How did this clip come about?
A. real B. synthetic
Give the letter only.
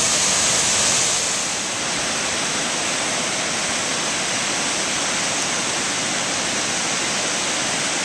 A